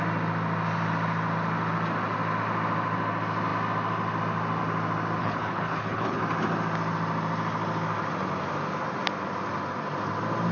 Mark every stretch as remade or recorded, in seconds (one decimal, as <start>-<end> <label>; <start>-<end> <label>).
0.0-5.2 recorded; 5.2-6.2 remade; 6.2-10.5 recorded